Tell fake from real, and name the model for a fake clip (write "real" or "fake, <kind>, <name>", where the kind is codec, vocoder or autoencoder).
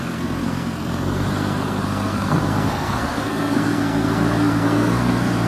fake, codec, SNAC